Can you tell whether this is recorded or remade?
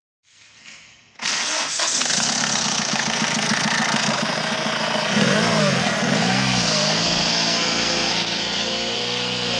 remade